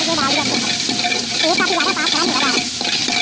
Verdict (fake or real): real